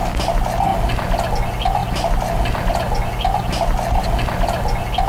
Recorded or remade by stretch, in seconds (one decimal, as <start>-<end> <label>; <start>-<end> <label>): 0.0-5.1 recorded